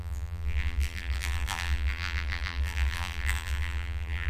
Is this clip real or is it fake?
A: fake